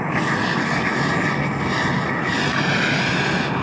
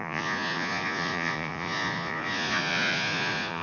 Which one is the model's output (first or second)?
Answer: second